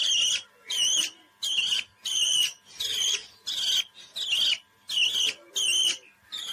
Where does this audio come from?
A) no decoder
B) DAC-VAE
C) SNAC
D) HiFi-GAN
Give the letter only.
A